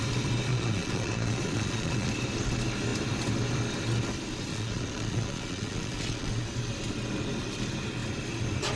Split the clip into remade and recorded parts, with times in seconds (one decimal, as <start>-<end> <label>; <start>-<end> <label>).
0.0-0.5 recorded; 0.5-2.1 remade; 2.1-4.5 recorded; 4.5-6.3 remade; 6.3-8.8 recorded